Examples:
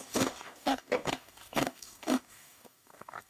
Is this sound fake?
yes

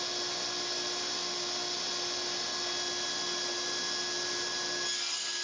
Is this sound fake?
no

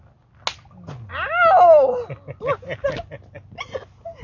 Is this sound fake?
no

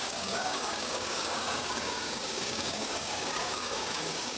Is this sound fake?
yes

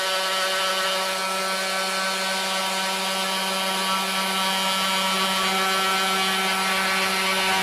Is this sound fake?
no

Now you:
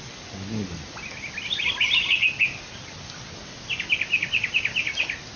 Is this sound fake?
no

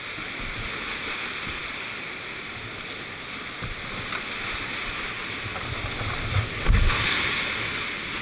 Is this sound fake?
no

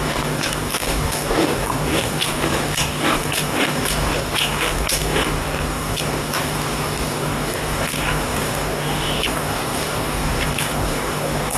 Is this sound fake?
yes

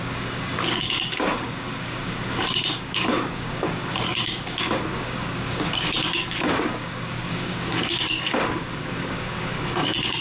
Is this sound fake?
yes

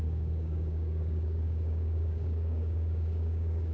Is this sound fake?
yes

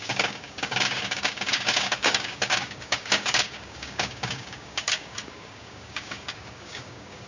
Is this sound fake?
yes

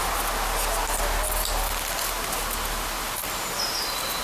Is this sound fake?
no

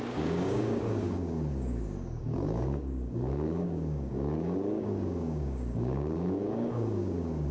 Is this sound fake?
yes